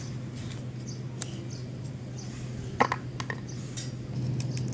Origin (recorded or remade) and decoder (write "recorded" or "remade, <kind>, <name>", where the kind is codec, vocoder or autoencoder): recorded